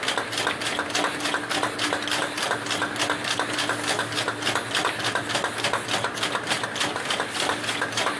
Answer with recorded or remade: recorded